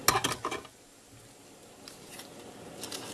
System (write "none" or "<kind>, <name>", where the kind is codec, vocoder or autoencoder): none